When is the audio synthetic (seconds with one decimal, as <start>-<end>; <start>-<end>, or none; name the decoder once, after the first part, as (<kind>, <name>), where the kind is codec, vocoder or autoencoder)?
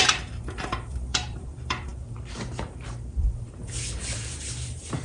0.0-5.0 (vocoder, BigVGAN v2)